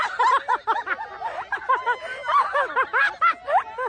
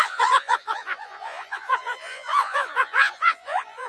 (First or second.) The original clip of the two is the first